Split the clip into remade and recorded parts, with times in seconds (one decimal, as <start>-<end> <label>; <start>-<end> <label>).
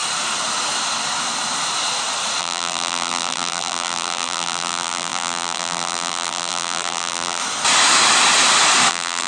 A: 0.0-2.4 recorded; 2.4-7.4 remade; 7.4-8.9 recorded; 8.9-9.3 remade